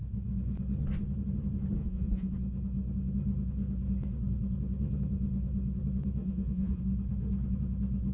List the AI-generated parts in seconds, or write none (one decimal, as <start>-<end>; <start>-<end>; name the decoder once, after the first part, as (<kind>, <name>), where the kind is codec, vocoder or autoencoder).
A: 1.8-2.3 (vocoder, Vocos); 6.2-6.8